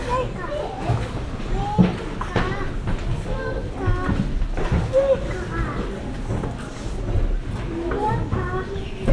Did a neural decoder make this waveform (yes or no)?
no